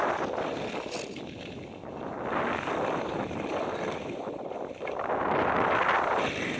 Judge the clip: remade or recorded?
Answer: recorded